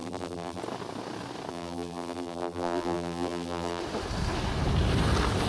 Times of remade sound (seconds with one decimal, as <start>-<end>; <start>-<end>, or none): 0.0-0.6; 1.5-3.8

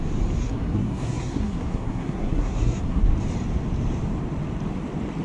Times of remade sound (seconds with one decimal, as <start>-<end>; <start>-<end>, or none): 0.4-3.0

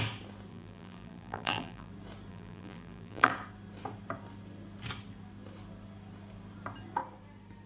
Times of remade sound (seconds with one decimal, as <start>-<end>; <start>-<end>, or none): 0.5-1.9; 2.3-3.3

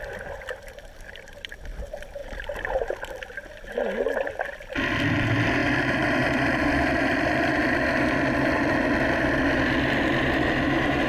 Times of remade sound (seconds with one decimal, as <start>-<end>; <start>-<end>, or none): 2.2-3.2; 5.6-7.6

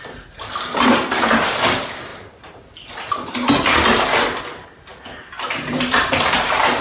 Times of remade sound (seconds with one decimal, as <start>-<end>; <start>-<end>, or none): none

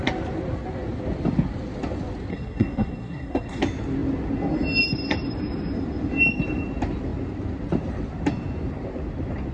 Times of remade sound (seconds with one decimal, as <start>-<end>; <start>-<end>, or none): 2.3-3.6